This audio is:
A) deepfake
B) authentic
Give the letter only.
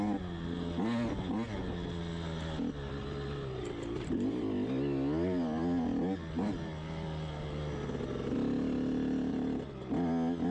B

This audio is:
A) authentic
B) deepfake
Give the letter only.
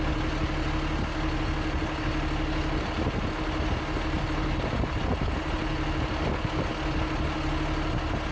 A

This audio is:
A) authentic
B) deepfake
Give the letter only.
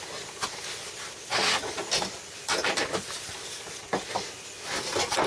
B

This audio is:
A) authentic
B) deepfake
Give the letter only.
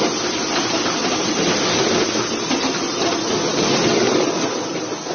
A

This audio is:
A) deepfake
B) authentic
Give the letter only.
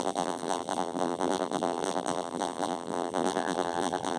A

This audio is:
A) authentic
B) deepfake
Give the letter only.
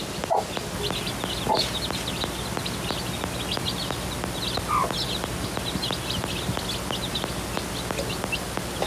A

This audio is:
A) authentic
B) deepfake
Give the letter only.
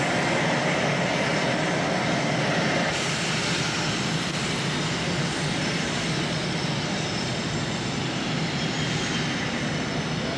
A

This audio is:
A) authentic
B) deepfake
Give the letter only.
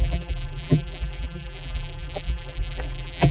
B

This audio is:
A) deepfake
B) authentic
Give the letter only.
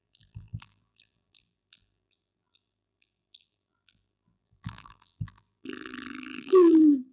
A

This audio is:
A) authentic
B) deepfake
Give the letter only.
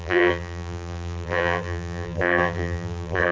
B